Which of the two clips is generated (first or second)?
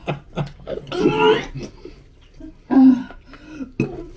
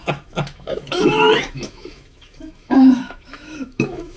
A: second